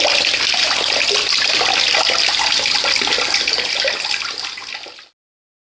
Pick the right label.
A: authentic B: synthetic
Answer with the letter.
A